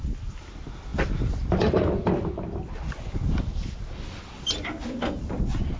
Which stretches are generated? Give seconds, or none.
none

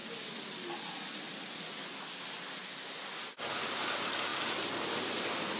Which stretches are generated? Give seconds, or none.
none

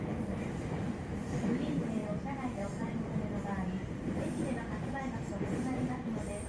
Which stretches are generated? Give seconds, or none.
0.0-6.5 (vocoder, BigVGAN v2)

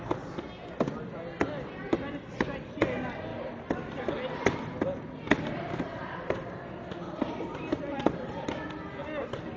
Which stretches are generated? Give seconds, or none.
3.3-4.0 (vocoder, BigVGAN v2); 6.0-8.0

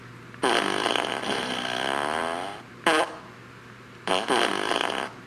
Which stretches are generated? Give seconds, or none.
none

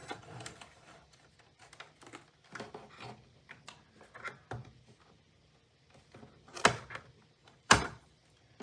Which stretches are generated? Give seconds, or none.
0.0-1.4 (vocoder, BigVGAN v2); 7.4-8.2

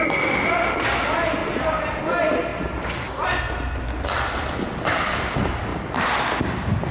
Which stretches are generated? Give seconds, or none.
1.4-2.0 (vocoder, BigVGAN v2); 2.5-3.4; 5.7-6.5

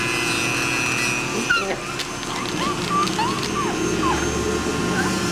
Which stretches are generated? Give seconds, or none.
none